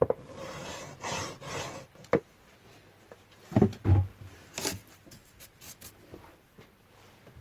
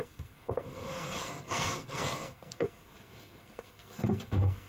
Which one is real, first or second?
first